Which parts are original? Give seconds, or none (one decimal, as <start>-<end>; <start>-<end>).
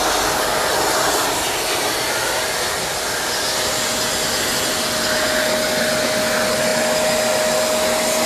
0.0-8.3